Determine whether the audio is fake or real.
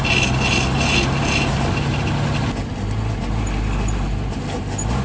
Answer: real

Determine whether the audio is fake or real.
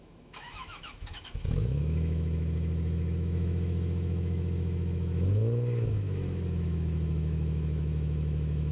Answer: fake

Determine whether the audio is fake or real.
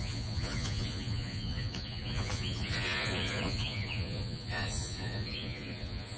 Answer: fake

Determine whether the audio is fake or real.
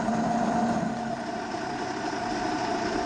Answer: fake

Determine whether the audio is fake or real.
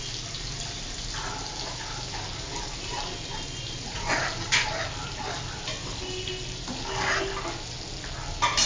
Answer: real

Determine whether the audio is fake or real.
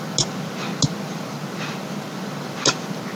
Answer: real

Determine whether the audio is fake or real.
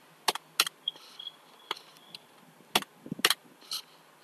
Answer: real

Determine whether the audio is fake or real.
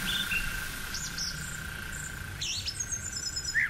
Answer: real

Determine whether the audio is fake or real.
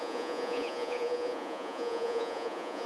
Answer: fake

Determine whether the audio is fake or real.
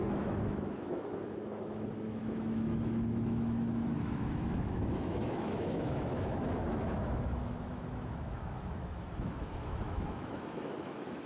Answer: fake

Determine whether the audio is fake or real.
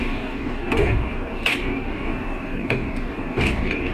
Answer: fake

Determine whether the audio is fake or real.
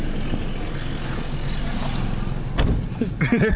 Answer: real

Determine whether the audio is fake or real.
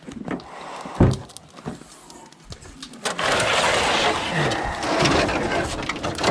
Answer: real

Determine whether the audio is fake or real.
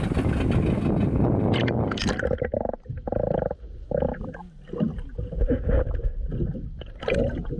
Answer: real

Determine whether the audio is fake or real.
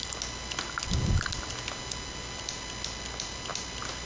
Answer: real